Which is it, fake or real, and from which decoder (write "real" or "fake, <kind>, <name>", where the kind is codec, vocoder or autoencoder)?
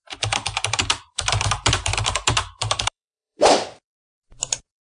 fake, vocoder, BigVGAN v2